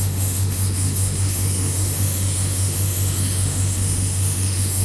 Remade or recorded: remade